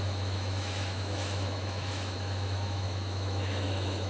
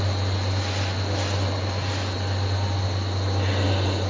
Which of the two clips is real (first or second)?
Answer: second